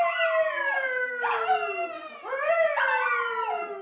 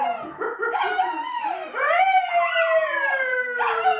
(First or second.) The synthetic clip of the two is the second